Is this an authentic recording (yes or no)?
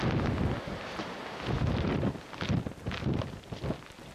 yes